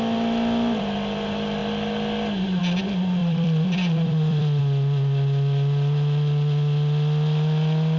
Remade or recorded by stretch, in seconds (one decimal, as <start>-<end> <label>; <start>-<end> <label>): 0.0-3.2 recorded; 3.2-4.6 remade; 4.6-8.0 recorded